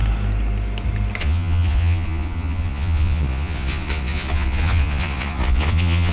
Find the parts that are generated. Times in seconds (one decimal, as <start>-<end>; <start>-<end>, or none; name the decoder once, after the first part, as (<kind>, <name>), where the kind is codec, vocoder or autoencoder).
1.2-6.1 (vocoder, Vocos)